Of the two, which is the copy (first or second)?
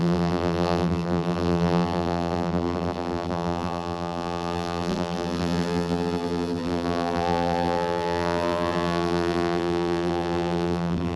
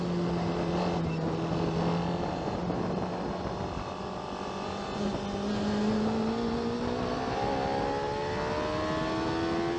first